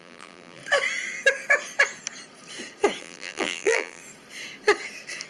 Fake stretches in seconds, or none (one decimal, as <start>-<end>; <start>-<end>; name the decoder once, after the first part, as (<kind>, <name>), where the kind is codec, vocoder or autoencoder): 0.0-0.6 (vocoder, BigVGAN v2); 3.0-4.0